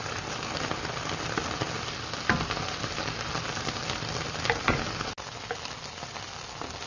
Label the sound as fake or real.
real